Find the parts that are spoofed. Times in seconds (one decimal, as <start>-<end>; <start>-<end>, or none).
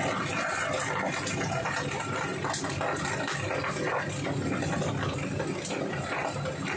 none